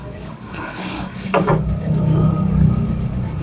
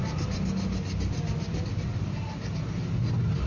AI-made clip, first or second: first